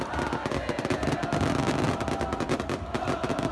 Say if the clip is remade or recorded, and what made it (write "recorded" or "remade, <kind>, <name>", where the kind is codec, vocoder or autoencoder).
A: recorded